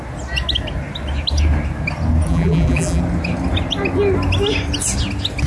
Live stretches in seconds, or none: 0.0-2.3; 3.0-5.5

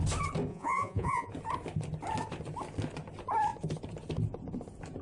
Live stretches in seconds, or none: 0.0-0.5; 1.3-5.0

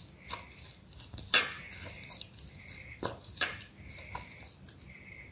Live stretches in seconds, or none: 0.0-5.3